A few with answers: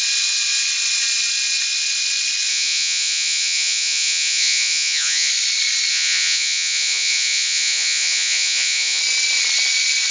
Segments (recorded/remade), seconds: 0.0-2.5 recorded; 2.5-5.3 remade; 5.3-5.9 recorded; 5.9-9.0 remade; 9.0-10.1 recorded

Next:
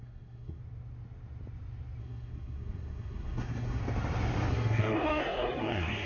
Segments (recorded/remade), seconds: 0.0-0.6 remade; 0.6-2.0 recorded; 2.0-3.8 remade; 3.8-4.5 recorded; 4.5-6.1 remade

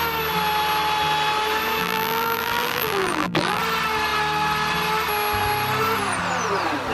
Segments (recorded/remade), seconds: 0.0-1.8 recorded; 1.8-3.6 remade; 3.6-6.9 recorded

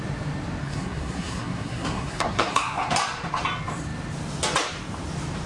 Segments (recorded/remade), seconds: 0.0-0.6 recorded; 0.6-2.9 remade; 2.9-5.5 recorded

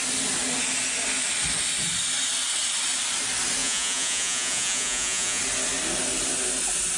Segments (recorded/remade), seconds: 0.0-3.6 recorded; 3.6-5.4 remade; 5.4-7.0 recorded

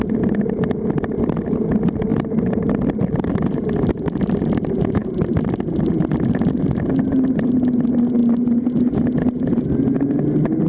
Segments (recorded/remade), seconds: 0.0-2.1 recorded; 2.1-3.7 remade; 3.7-10.7 recorded

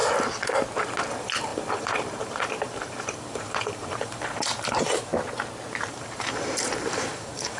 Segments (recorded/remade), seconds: 0.0-1.1 recorded; 1.1-5.1 remade; 5.1-5.8 recorded; 5.8-7.6 remade

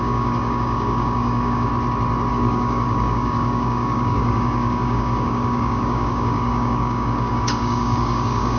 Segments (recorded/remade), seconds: 0.0-1.7 remade; 1.7-2.3 recorded; 2.3-8.6 remade